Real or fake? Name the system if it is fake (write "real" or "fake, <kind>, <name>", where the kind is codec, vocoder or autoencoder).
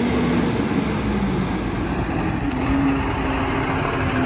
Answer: real